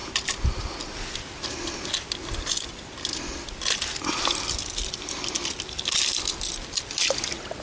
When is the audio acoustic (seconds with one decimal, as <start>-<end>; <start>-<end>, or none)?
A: 0.0-7.6